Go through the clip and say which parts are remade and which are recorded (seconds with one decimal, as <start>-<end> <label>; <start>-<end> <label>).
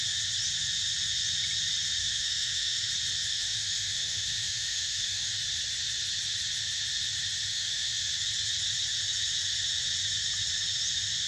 0.0-2.0 recorded; 2.0-2.9 remade; 2.9-3.3 recorded; 3.3-5.4 remade; 5.4-7.5 recorded; 7.5-8.1 remade; 8.1-11.3 recorded